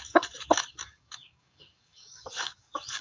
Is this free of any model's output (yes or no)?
no